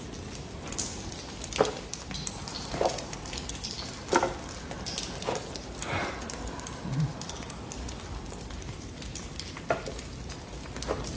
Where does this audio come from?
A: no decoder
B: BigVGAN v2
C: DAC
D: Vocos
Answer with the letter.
A